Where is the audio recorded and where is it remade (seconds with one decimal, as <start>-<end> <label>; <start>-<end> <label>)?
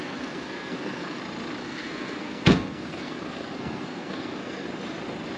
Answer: 0.0-1.2 remade; 1.2-1.6 recorded; 1.6-4.7 remade; 4.7-5.4 recorded